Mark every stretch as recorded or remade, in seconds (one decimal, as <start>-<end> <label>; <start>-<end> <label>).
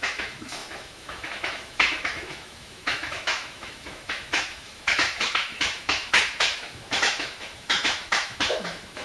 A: 0.0-9.0 remade